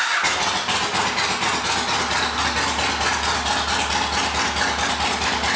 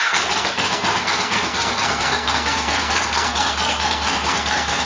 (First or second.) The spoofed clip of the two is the second